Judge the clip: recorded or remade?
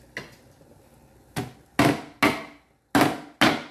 recorded